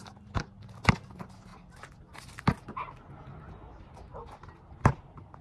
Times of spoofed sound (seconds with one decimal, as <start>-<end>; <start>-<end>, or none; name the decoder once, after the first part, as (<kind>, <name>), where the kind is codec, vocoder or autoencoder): none